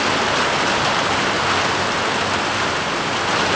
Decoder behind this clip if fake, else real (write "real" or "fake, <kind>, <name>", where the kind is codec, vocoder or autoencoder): real